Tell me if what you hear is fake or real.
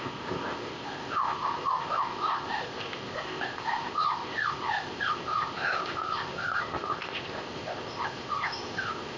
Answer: fake